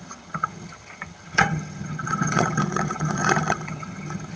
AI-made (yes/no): yes